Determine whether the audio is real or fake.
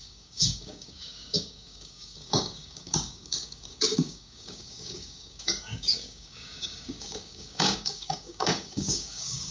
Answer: fake